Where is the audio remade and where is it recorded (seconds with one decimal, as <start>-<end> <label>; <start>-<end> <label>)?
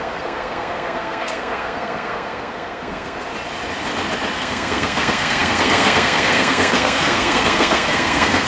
0.0-3.3 remade; 3.3-4.4 recorded; 4.4-8.5 remade